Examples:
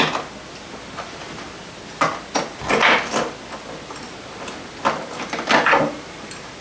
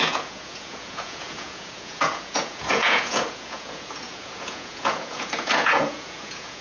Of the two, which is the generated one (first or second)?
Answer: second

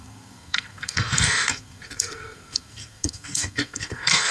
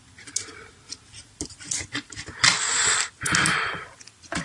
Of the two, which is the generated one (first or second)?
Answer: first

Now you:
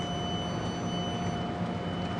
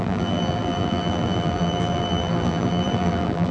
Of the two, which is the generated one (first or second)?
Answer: second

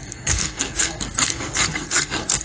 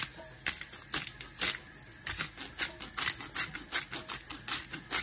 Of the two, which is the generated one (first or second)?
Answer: first